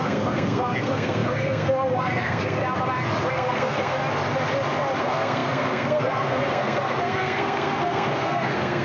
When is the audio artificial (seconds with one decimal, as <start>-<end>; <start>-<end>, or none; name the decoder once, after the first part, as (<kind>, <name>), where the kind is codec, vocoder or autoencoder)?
0.0-2.6 (codec, SNAC); 3.3-4.0; 5.0-8.8